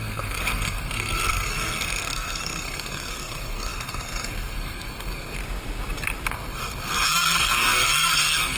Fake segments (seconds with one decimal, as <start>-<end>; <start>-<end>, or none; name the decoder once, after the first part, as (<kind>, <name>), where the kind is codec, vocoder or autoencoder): 0.0-5.4 (codec, SNAC); 6.3-8.6